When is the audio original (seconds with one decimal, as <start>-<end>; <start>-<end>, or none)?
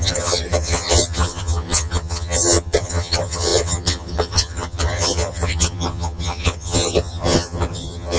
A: none